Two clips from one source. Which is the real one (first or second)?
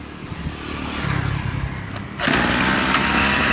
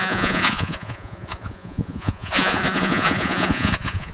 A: first